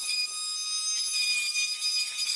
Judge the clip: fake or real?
real